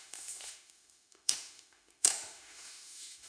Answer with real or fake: fake